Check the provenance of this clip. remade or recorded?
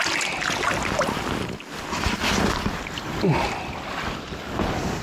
recorded